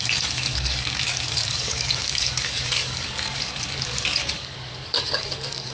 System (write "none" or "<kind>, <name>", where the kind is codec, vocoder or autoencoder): codec, DAC